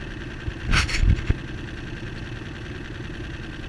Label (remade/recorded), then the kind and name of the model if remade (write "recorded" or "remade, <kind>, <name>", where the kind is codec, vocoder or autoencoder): recorded